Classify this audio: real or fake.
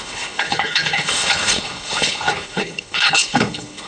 fake